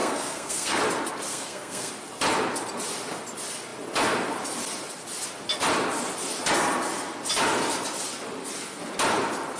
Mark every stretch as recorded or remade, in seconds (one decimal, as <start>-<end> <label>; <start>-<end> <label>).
0.0-0.8 remade; 0.8-1.3 recorded; 1.3-1.9 remade; 1.9-9.6 recorded